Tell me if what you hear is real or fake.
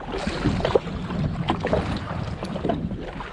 real